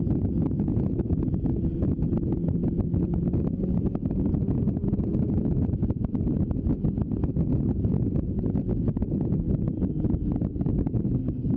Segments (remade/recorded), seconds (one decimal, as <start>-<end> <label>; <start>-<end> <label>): 0.0-11.6 recorded